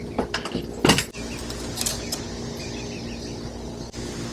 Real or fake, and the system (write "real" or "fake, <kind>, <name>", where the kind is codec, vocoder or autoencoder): real